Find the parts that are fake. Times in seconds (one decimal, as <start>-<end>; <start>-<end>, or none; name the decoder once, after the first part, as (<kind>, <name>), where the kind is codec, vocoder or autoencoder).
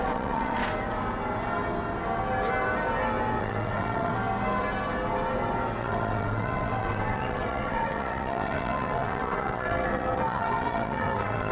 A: 0.0-0.6 (vocoder, WaveNeXt); 3.4-4.1; 5.8-11.5